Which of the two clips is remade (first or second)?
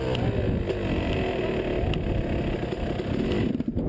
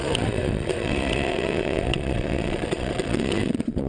second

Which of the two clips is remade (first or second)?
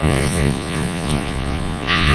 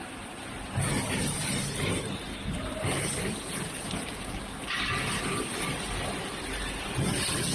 first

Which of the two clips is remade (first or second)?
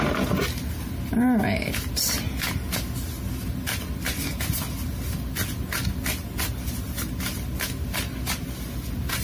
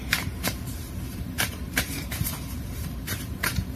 second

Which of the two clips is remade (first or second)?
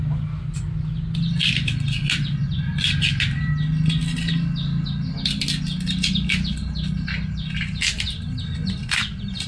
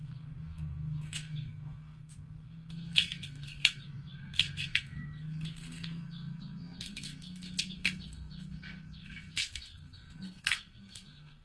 second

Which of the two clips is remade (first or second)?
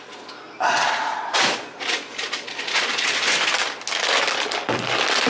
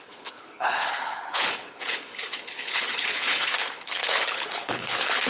second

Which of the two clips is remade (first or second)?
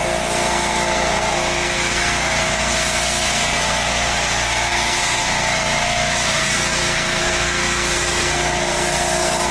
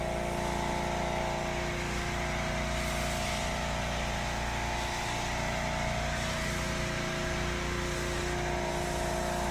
first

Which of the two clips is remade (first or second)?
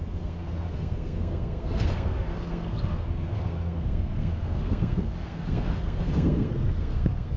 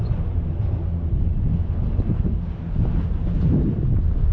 first